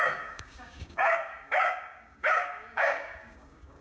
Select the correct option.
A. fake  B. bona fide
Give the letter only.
A